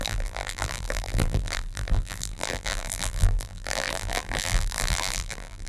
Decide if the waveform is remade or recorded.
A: remade